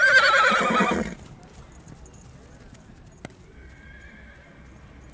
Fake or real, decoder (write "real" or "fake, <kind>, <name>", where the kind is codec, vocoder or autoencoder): real